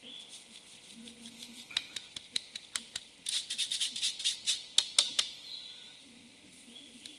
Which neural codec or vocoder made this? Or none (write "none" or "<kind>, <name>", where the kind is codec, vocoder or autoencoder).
none